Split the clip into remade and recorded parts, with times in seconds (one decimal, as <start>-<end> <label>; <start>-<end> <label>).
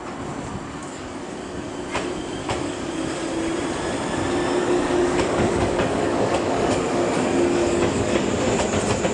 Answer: 0.0-0.8 recorded; 0.8-1.7 remade; 1.7-2.4 recorded; 2.4-2.9 remade; 2.9-4.6 recorded; 4.6-8.2 remade; 8.2-9.1 recorded